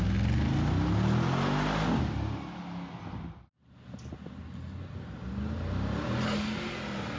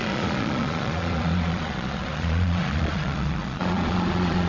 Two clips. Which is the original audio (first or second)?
first